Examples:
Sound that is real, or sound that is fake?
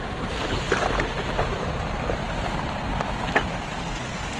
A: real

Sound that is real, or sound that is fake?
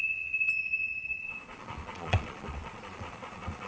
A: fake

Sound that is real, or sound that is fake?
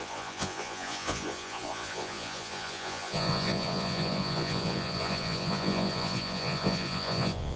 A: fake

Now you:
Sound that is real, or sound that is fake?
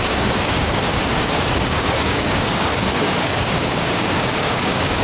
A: fake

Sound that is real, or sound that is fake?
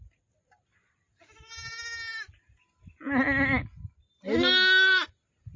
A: real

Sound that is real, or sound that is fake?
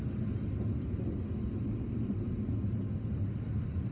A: real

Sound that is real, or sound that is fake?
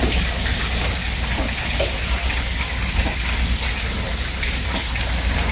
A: real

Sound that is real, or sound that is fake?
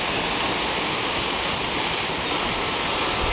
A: real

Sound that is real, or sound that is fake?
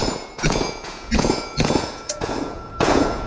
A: fake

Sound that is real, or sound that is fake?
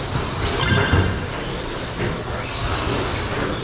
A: real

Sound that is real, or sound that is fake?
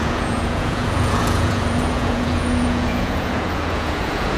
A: fake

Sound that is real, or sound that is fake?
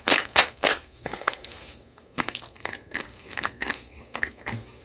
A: fake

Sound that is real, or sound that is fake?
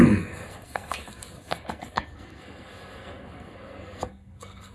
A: fake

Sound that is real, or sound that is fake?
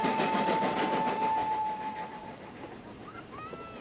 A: real